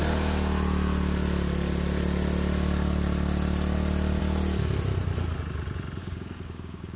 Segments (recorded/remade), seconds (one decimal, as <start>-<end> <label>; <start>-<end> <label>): 0.0-6.0 recorded; 6.0-7.0 remade

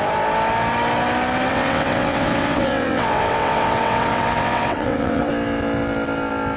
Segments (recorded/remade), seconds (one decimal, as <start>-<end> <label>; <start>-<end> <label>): 0.0-1.5 recorded; 1.5-5.2 remade; 5.2-6.6 recorded

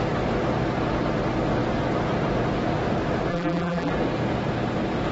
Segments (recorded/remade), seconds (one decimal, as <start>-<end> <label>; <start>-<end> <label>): 0.0-3.3 recorded; 3.3-3.9 remade; 3.9-5.1 recorded

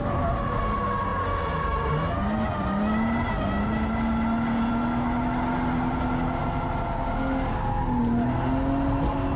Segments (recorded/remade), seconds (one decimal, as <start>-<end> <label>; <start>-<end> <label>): 0.0-9.4 recorded